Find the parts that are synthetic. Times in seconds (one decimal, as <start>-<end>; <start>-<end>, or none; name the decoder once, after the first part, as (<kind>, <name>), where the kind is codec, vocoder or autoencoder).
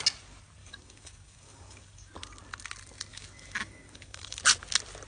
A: 0.6-2.1 (codec, DAC); 3.1-4.4